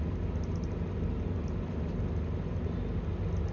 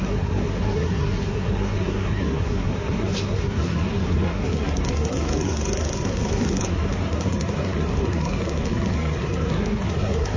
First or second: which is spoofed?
second